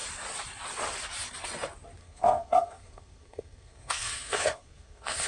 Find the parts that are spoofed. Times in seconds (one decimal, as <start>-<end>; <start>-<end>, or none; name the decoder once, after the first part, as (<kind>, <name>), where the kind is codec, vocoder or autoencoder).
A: 2.0-5.3 (codec, SNAC)